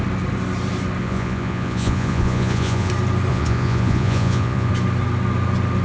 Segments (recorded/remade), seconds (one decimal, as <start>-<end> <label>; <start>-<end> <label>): 0.0-1.0 recorded; 1.0-2.9 remade; 2.9-3.3 recorded; 3.3-4.7 remade; 4.7-5.8 recorded